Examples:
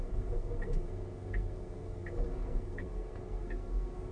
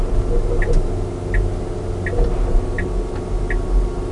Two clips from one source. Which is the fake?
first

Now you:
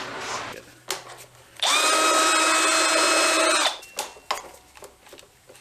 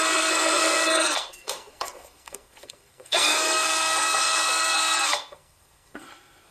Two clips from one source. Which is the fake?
second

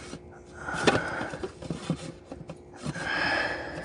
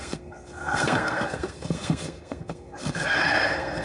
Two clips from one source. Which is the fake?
second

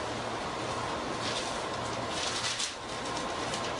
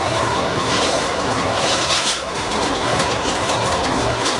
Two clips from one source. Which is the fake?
second